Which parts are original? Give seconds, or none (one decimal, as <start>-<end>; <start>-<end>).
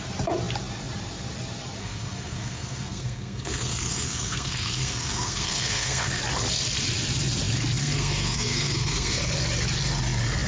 0.0-1.8; 6.2-7.8; 9.2-10.5